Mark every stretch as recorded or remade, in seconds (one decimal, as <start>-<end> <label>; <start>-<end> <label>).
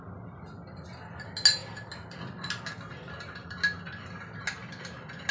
0.0-5.3 recorded